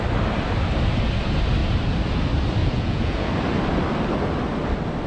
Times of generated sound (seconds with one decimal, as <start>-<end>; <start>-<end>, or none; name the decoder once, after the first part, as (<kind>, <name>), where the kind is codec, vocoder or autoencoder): 2.6-3.3 (vocoder, Vocos)